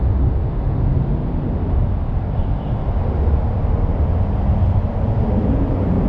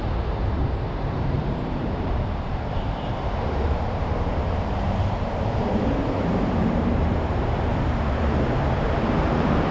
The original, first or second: first